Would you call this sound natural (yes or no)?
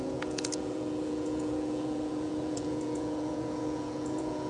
no